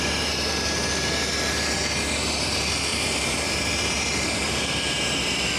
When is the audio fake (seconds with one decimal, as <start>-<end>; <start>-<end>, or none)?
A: 2.9-3.6